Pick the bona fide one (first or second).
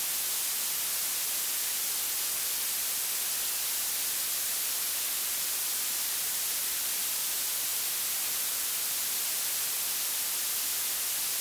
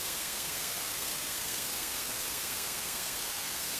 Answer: first